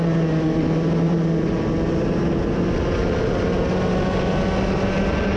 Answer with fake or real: real